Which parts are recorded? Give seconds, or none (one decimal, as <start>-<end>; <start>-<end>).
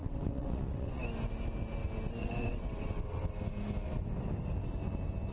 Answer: 1.0-2.2; 3.3-5.3